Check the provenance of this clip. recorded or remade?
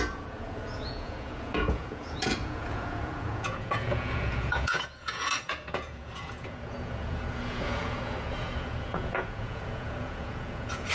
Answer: remade